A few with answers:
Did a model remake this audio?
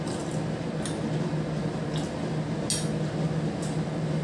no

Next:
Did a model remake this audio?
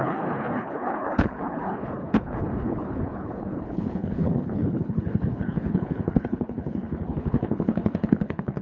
yes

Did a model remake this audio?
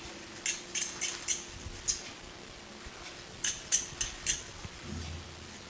no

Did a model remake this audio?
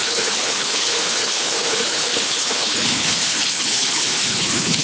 yes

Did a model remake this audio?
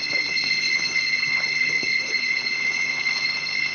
yes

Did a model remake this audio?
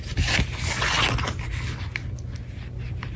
no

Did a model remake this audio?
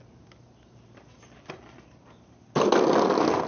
no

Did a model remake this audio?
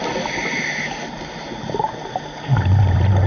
no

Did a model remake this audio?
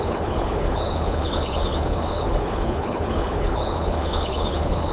yes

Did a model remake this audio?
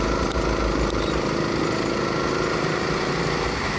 no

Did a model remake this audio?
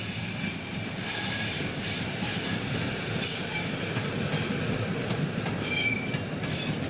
no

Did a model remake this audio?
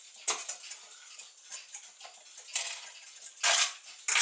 no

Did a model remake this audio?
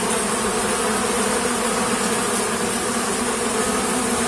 no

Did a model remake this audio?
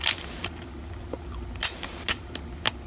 no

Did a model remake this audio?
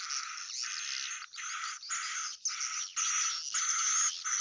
no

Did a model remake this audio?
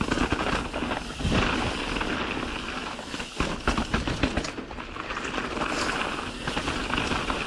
no